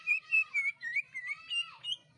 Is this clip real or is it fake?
fake